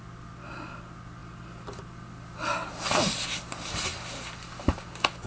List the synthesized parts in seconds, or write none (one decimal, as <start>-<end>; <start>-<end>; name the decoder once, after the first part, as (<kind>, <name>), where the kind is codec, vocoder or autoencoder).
none